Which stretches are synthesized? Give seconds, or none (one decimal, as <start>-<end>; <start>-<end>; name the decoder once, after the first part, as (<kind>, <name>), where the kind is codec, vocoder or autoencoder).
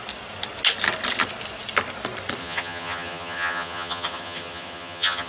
2.4-5.3 (vocoder, HiFi-GAN)